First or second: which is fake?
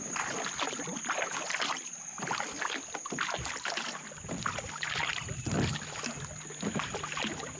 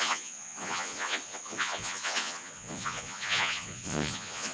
second